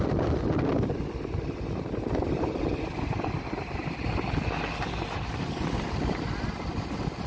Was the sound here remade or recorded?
recorded